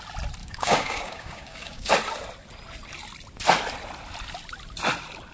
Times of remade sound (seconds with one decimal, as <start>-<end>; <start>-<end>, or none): 0.4-1.9